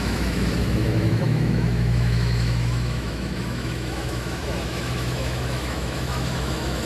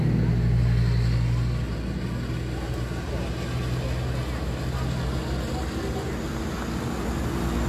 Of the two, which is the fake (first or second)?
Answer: first